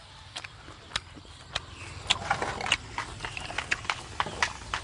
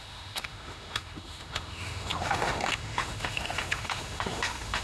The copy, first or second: second